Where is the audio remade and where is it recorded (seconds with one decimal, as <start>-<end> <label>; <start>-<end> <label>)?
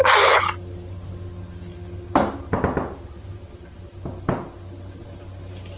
0.0-5.8 recorded